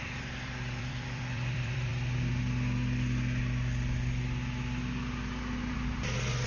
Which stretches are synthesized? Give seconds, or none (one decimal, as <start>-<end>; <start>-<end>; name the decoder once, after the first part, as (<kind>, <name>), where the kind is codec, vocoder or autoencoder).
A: 0.0-1.9 (vocoder, BigVGAN v2); 5.7-6.5

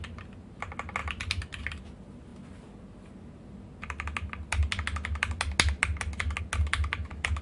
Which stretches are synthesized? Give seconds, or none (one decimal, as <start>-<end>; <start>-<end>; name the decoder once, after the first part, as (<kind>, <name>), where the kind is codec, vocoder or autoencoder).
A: 1.0-1.6 (vocoder, BigVGAN v2)

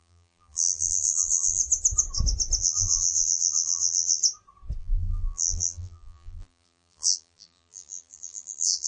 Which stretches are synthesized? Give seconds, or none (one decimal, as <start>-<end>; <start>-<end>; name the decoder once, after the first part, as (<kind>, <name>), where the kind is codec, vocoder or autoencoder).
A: 0.0-1.6 (vocoder, BigVGAN v2); 2.6-4.2; 4.8-8.9

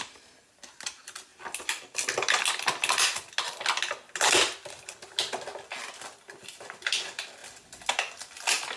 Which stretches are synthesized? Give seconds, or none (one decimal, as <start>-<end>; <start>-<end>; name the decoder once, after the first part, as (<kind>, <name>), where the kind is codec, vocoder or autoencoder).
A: none

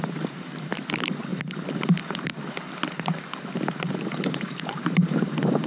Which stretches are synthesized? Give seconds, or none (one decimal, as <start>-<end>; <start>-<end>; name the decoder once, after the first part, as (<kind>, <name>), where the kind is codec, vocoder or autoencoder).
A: 0.0-1.3 (vocoder, BigVGAN v2); 3.9-5.7